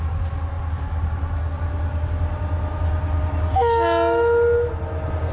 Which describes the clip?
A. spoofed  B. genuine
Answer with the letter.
B